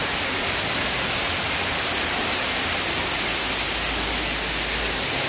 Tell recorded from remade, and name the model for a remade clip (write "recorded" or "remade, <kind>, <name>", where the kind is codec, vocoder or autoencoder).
recorded